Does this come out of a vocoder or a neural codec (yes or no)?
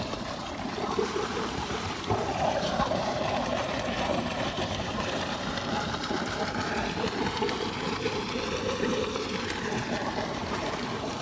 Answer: yes